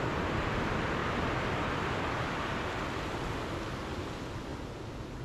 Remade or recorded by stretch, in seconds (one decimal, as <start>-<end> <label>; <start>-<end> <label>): 0.0-5.2 recorded

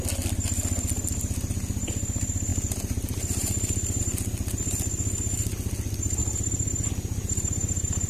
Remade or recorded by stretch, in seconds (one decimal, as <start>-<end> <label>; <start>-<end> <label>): 0.0-8.1 recorded

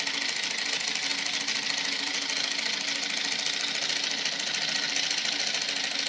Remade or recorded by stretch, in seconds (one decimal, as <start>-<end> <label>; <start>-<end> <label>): 0.0-6.1 recorded

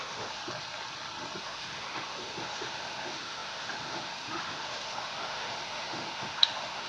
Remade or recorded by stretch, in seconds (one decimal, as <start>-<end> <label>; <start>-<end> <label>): 0.0-0.4 remade; 0.4-1.4 recorded; 1.4-6.9 remade

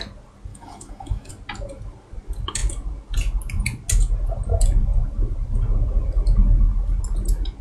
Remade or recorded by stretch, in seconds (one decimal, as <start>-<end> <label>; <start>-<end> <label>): 0.0-0.5 recorded; 0.5-1.3 remade; 1.3-7.6 recorded

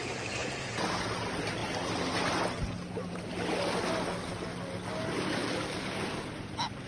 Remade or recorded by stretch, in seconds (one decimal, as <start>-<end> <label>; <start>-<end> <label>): 0.0-6.9 recorded

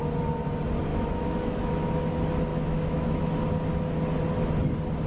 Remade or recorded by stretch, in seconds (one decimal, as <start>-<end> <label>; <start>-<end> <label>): 0.0-0.9 recorded; 0.9-1.9 remade; 1.9-2.5 recorded; 2.5-3.3 remade; 3.3-5.1 recorded

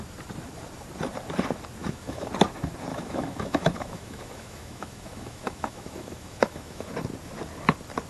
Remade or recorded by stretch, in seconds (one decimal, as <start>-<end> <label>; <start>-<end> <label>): 0.0-1.8 recorded; 1.8-2.3 remade; 2.3-2.9 recorded; 2.9-6.9 remade; 6.9-8.1 recorded